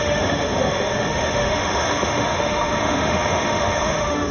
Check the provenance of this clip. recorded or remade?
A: remade